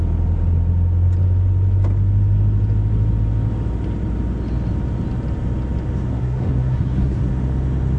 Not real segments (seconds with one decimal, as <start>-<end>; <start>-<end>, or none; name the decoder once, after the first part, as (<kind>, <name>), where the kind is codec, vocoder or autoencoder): 6.1-7.3 (codec, SNAC)